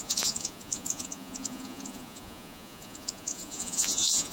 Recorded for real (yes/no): no